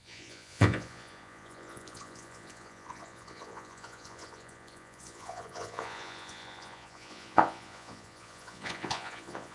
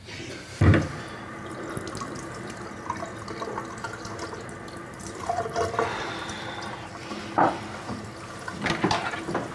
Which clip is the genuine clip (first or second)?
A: second